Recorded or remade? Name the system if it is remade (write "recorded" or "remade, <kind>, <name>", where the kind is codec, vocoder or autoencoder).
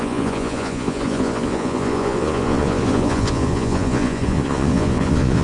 remade, vocoder, Vocos